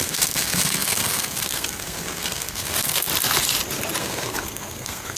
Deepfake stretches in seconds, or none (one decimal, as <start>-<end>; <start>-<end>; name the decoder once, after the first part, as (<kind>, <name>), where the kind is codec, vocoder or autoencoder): 0.0-3.1 (codec, SNAC); 4.0-5.2